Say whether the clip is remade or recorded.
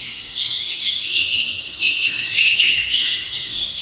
remade